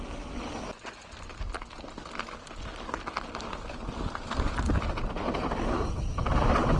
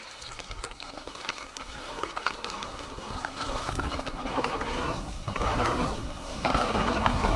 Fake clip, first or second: second